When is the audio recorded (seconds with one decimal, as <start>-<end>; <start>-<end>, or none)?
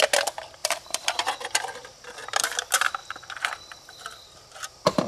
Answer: 0.0-0.6; 1.3-3.0